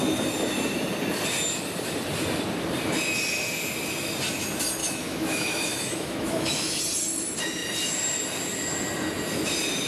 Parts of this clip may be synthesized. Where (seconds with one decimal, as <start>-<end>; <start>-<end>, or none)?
4.8-6.8